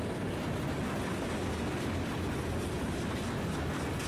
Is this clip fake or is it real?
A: real